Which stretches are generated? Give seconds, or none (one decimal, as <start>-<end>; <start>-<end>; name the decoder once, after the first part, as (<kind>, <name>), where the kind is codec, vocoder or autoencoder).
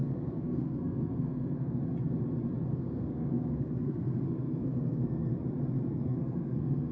0.0-1.8 (codec, SNAC); 2.7-5.3; 5.9-6.9